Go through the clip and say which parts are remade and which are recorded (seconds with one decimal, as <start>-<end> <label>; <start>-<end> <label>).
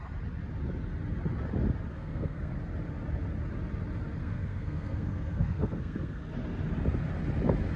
0.0-1.9 recorded; 1.9-2.5 remade; 2.5-4.2 recorded; 4.2-6.2 remade; 6.2-7.8 recorded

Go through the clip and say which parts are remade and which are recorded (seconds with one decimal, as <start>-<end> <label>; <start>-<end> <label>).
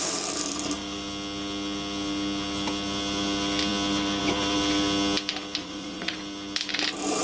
0.0-5.6 recorded; 5.6-6.2 remade; 6.2-7.2 recorded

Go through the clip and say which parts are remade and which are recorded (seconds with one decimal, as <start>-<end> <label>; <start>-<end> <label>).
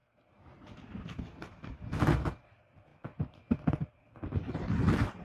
0.0-5.2 recorded